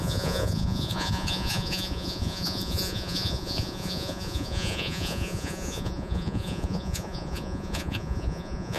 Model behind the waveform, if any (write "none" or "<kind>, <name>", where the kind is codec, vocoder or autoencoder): vocoder, Vocos